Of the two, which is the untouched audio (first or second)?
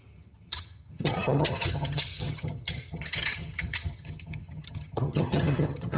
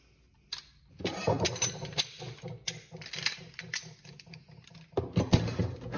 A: second